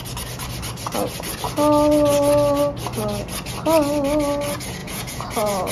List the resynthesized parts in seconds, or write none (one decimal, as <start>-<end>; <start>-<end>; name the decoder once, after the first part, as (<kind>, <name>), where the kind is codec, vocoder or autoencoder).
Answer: 4.8-5.7 (vocoder, Vocos)